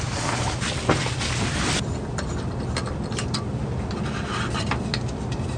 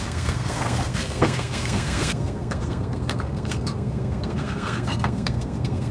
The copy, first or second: second